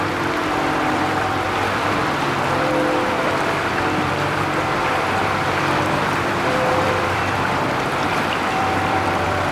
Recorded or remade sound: remade